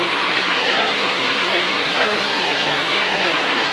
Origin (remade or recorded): remade